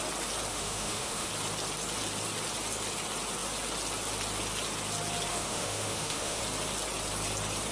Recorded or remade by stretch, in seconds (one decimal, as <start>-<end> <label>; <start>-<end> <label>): 0.0-0.5 recorded; 0.5-1.3 remade; 1.3-5.3 recorded; 5.3-6.4 remade; 6.4-7.7 recorded